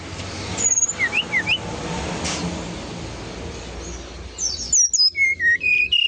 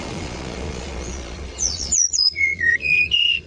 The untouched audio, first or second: first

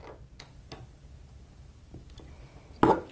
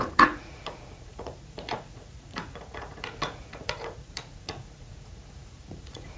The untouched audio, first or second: first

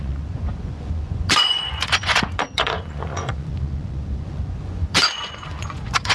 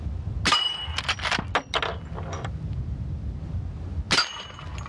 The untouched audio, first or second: second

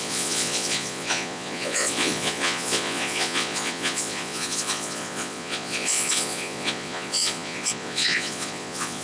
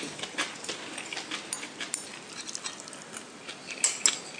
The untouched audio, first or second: second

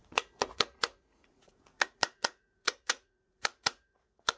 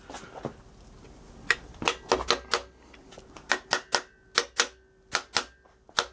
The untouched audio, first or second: second